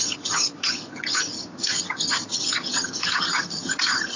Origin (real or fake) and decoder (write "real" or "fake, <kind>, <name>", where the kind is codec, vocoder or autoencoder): fake, vocoder, HiFi-GAN